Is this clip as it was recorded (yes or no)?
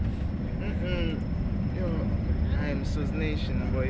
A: yes